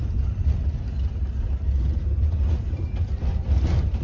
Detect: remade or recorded recorded